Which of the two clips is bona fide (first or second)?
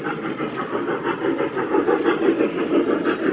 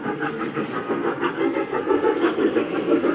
first